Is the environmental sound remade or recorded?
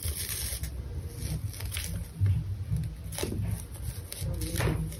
recorded